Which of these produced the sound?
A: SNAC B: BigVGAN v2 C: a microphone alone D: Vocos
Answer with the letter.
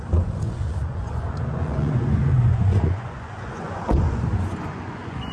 D